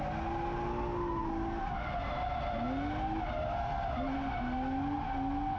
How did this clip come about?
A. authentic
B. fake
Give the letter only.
A